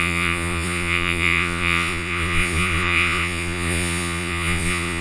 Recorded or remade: remade